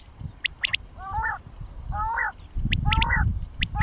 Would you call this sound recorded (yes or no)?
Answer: yes